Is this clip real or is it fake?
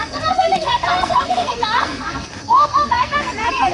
fake